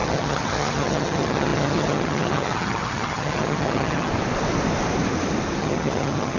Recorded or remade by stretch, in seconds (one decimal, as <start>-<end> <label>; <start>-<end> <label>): 0.0-4.1 remade; 4.1-5.6 recorded; 5.6-6.4 remade